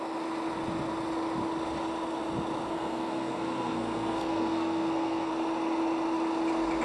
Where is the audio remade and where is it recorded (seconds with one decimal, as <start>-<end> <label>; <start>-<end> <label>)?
0.0-2.7 recorded; 2.7-5.3 remade; 5.3-6.8 recorded